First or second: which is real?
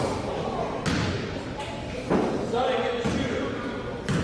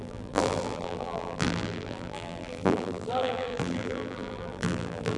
first